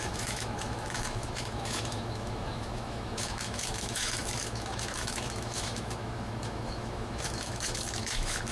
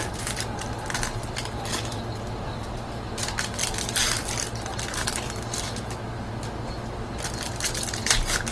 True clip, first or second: second